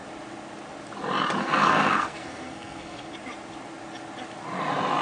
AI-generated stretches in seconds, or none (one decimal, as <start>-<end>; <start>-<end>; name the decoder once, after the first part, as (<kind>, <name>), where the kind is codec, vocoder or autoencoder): 1.4-3.1 (codec, SNAC)

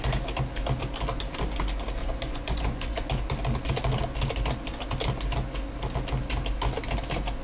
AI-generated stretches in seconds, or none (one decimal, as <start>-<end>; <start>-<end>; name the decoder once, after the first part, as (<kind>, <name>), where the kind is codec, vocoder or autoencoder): 2.0-3.1 (vocoder, Vocos)